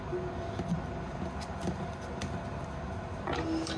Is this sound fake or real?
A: real